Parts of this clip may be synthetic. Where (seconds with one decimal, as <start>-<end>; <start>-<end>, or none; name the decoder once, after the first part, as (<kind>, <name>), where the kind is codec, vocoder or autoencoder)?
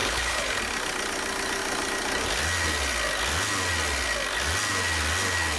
0.0-0.6 (codec, HILCodec)